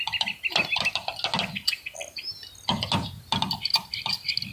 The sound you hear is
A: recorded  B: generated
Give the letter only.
A